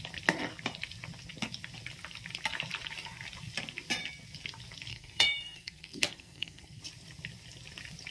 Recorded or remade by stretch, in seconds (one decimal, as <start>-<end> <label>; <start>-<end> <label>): 0.0-4.9 recorded; 4.9-6.8 remade; 6.8-8.1 recorded